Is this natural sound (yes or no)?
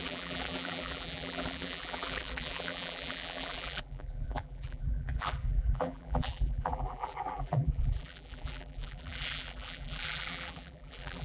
no